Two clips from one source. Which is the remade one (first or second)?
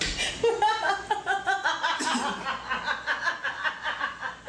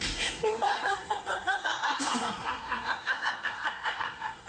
second